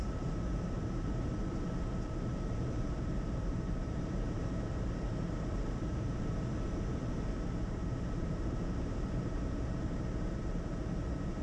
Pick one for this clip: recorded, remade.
remade